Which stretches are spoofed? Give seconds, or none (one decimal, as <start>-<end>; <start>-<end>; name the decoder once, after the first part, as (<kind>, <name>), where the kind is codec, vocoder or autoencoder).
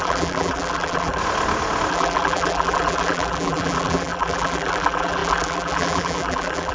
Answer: 0.0-1.2 (vocoder, BigVGAN v2); 1.9-6.7